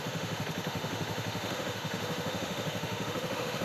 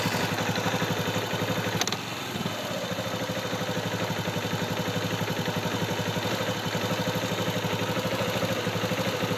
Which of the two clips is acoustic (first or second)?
second